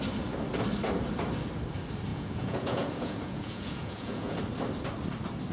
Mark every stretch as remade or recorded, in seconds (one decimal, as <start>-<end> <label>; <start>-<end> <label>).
0.0-2.1 recorded; 2.1-4.4 remade; 4.4-5.5 recorded